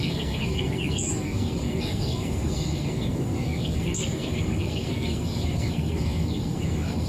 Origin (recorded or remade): remade